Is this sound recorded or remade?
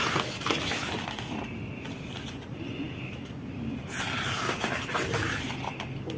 recorded